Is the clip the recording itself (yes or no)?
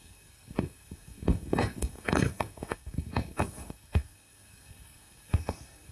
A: no